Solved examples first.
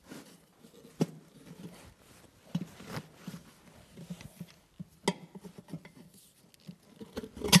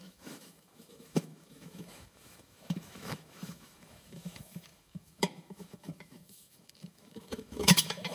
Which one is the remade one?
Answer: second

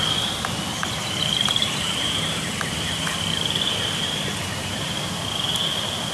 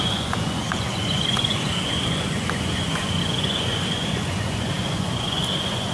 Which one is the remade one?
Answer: second